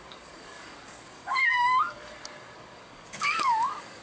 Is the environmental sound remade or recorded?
remade